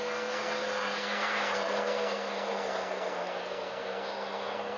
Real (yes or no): no